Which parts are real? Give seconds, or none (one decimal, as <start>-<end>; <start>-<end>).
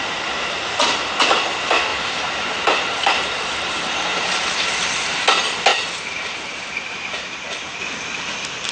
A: 0.0-1.9; 5.2-5.7; 7.8-8.7